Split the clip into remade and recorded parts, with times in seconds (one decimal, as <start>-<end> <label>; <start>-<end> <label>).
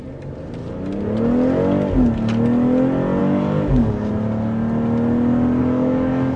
0.0-3.2 recorded; 3.2-4.1 remade; 4.1-5.6 recorded; 5.6-6.4 remade